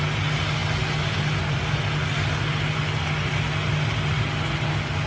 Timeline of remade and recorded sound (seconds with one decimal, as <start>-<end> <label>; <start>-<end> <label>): 0.0-5.1 recorded